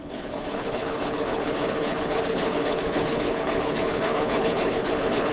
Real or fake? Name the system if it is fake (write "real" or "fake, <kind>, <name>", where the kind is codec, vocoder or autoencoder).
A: fake, codec, HILCodec